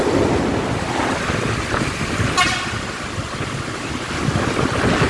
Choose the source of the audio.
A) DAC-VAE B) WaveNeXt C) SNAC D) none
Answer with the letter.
D